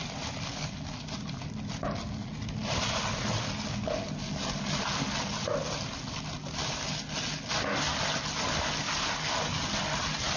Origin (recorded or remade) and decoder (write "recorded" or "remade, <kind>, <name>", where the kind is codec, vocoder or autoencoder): recorded